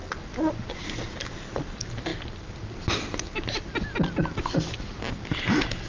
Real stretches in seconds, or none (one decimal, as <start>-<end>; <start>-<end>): 0.0-5.9